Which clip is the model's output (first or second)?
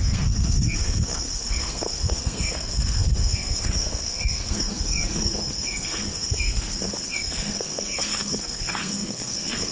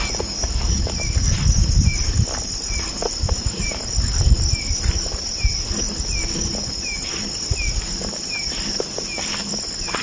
first